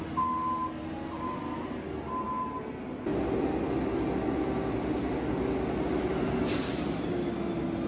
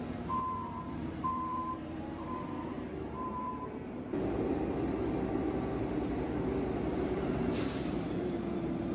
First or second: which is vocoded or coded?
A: second